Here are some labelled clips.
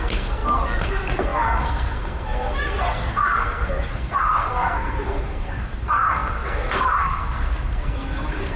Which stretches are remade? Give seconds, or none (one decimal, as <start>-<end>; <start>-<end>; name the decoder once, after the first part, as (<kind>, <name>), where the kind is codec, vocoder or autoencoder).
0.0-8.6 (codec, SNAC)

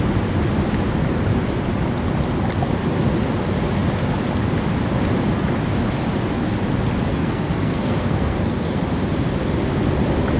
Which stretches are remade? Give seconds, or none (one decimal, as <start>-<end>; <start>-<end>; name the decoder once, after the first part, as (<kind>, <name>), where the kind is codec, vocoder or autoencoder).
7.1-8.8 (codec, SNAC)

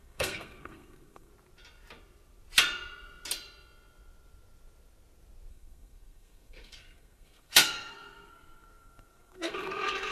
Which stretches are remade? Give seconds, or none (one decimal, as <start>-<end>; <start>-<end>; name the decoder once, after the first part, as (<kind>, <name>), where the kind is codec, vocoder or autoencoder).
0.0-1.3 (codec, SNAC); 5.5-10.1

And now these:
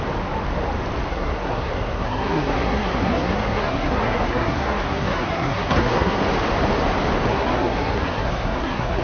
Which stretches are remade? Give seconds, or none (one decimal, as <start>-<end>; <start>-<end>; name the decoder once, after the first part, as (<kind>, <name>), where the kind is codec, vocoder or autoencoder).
1.1-6.2 (codec, SNAC); 7.3-9.0

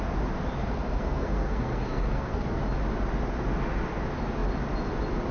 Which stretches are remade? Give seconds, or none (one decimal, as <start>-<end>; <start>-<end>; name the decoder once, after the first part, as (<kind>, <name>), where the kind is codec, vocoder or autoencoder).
0.6-2.6 (codec, SNAC)